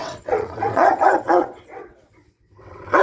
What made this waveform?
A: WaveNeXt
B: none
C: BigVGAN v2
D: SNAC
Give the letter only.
A